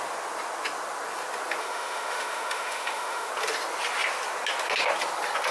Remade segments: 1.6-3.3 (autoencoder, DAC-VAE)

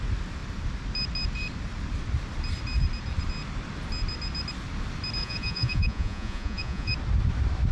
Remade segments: 5.2-6.9 (vocoder, Vocos)

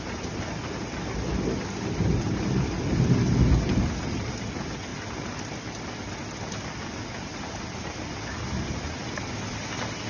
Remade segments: none

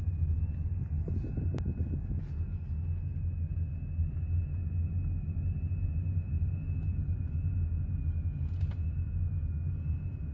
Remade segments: none

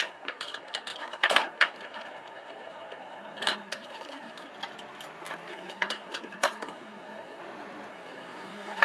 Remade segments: 0.0-4.5 (codec, SNAC); 5.5-7.4; 7.9-8.8